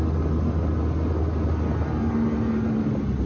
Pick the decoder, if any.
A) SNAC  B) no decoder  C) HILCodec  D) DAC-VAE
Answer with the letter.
B